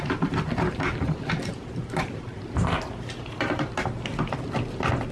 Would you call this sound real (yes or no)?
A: yes